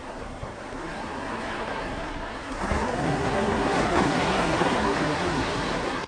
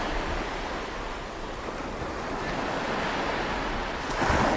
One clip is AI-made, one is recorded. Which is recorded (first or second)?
second